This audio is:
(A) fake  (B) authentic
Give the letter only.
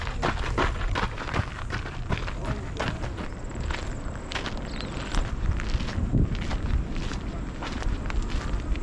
B